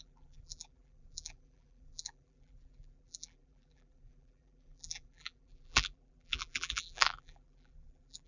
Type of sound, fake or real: fake